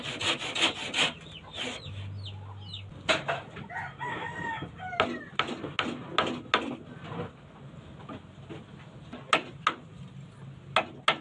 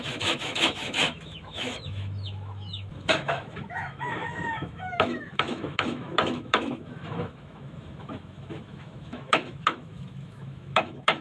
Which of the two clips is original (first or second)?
first